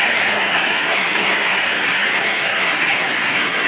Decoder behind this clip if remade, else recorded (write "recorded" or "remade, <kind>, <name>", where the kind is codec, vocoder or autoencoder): remade, codec, SNAC